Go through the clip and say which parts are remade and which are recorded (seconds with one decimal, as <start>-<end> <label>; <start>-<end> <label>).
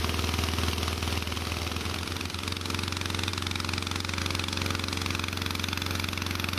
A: 0.0-6.6 recorded